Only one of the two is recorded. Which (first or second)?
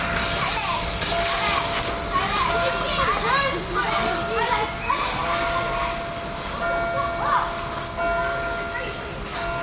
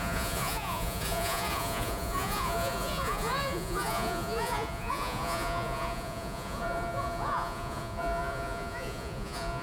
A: first